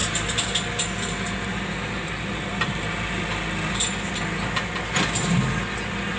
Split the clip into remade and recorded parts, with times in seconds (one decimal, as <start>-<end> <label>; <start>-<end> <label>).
0.0-6.2 recorded